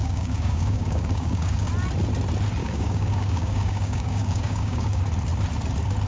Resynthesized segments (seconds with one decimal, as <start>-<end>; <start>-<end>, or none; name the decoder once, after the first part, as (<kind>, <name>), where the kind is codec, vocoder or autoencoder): 0.0-1.7 (codec, DAC); 2.6-5.0